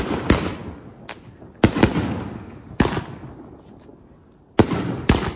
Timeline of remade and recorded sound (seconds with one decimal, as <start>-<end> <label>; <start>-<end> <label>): 0.0-5.4 recorded